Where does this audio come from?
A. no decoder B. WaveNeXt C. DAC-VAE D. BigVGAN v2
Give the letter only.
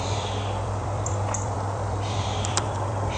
D